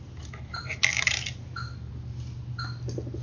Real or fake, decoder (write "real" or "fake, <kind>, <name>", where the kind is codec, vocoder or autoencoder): real